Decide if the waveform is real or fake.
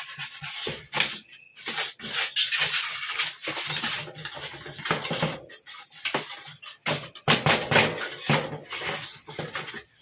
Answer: real